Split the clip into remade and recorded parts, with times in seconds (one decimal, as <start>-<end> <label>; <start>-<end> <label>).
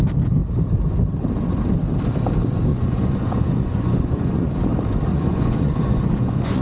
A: 0.0-2.7 recorded; 2.7-4.6 remade; 4.6-5.1 recorded; 5.1-6.6 remade